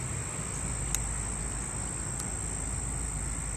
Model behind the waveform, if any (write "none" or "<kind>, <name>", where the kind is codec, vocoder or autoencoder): none